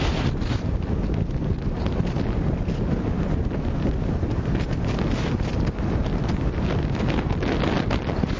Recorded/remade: recorded